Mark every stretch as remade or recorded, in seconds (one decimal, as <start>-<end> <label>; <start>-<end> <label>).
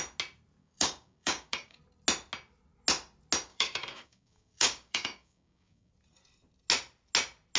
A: 0.0-0.6 recorded; 0.6-1.8 remade; 1.8-3.5 recorded; 3.5-5.9 remade; 5.9-7.6 recorded